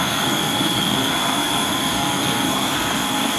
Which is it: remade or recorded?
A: remade